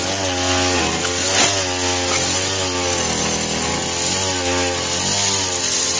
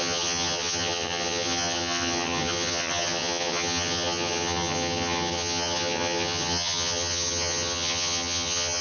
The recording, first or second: first